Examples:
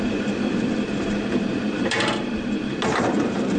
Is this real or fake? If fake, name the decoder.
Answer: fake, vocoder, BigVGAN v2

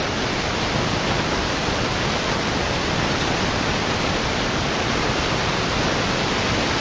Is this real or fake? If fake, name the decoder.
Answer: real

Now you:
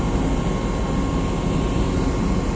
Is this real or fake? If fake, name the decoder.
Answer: real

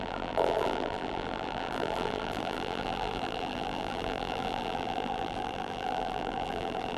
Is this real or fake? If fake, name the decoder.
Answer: fake, vocoder, BigVGAN v2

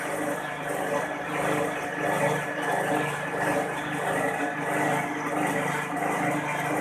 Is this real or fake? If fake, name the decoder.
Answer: real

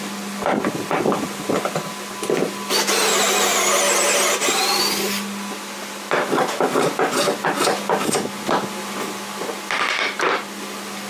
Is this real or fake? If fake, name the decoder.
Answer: real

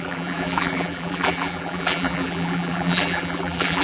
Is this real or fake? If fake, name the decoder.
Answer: fake, vocoder, BigVGAN v2